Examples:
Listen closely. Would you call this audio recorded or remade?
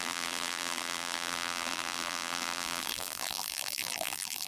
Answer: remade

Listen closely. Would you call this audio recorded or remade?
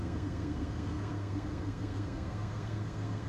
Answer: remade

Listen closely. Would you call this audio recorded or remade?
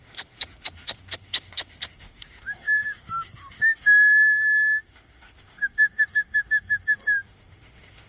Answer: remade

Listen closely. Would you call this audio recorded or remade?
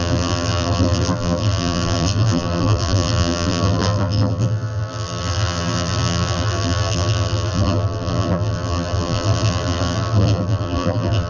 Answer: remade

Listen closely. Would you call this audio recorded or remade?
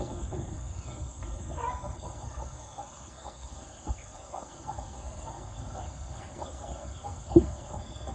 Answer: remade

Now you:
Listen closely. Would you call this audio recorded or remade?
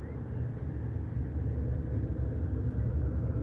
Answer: recorded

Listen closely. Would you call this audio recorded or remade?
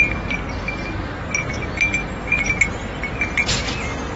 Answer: recorded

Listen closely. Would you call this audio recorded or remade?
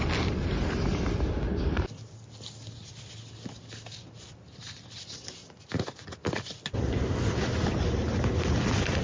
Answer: recorded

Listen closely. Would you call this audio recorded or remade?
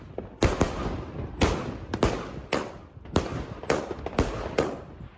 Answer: recorded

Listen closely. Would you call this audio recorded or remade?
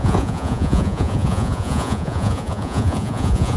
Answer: remade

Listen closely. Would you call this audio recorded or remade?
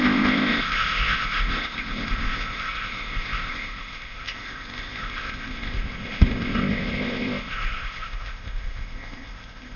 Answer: remade